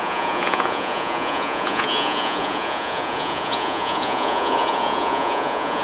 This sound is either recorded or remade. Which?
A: remade